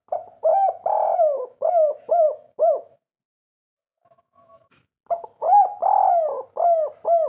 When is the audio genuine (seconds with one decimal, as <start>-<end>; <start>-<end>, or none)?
0.0-0.5; 4.9-7.3